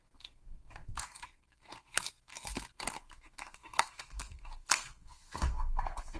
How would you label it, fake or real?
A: fake